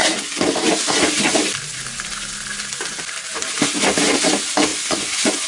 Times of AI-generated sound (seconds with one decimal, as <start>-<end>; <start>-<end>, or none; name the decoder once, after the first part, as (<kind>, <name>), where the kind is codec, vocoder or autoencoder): 4.7-5.5 (vocoder, Vocos)